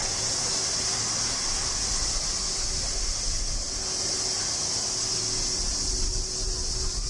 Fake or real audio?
real